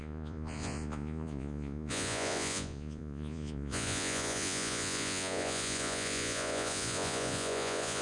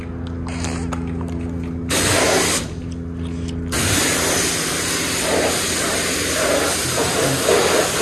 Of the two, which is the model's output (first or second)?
first